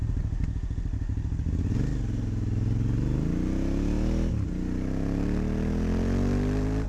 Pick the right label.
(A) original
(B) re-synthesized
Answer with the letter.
A